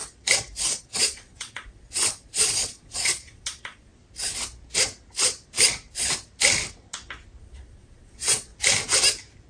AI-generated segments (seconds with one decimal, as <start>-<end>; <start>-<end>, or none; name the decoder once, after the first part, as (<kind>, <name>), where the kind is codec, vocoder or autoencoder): 0.8-3.9 (vocoder, Vocos); 7.4-8.5